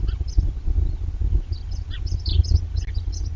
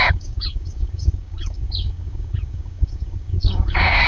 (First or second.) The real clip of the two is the first